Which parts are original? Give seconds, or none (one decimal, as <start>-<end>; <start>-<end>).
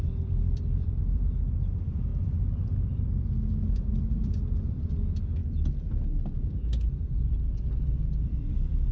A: 5.4-6.9